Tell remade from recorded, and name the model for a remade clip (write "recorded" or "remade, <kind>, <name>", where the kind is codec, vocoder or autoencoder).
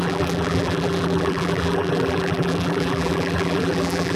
remade, vocoder, BigVGAN v2